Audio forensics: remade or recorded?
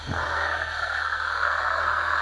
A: remade